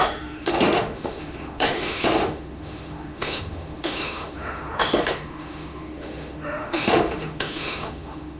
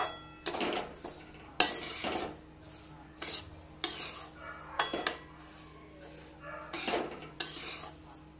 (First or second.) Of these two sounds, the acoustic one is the second